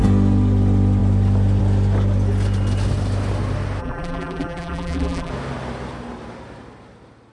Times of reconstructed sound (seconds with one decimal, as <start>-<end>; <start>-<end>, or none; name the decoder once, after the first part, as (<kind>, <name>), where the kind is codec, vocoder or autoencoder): 3.8-5.3 (vocoder, BigVGAN v2)